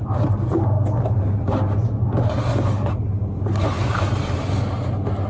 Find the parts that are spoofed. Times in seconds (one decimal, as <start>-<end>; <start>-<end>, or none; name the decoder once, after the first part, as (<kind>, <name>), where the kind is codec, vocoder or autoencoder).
none